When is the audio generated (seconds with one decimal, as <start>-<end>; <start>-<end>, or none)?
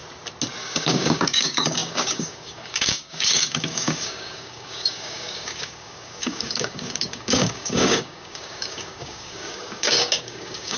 0.6-10.8